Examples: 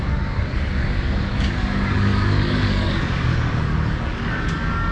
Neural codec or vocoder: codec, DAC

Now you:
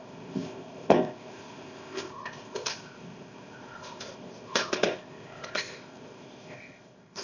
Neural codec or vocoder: codec, ZipCodec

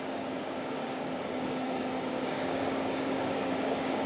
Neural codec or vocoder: codec, DAC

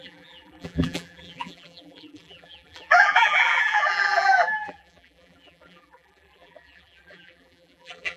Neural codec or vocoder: vocoder, BigVGAN v2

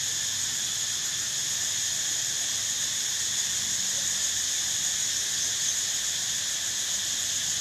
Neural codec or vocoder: none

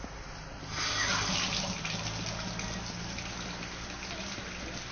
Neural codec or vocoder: none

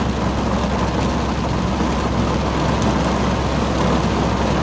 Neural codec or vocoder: none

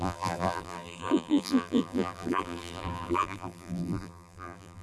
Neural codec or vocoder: vocoder, BigVGAN v2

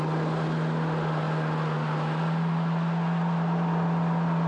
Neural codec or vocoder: none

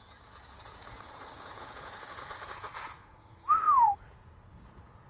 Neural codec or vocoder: vocoder, Vocos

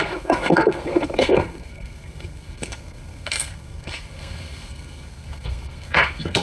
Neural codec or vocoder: codec, SNAC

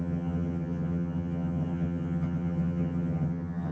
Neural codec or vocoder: vocoder, HiFi-GAN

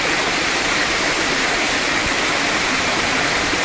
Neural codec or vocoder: none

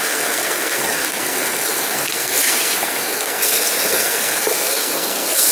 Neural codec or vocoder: codec, SNAC